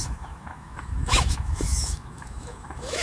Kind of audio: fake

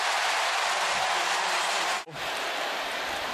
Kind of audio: real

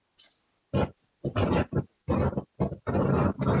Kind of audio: real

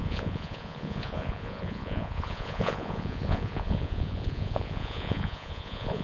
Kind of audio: fake